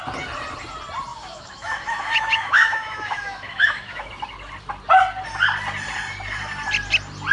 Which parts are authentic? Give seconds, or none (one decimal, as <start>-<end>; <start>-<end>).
0.0-1.1; 4.1-7.3